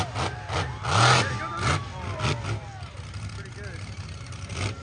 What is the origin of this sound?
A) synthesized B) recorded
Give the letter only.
B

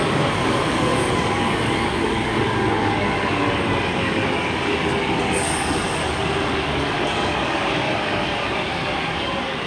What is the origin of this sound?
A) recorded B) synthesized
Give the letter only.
B